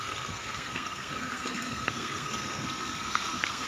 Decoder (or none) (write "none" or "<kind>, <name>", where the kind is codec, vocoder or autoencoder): codec, SNAC